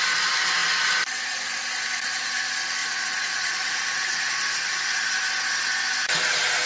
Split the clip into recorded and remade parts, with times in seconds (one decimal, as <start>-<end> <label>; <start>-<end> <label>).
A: 0.0-2.8 recorded; 2.8-5.1 remade; 5.1-6.7 recorded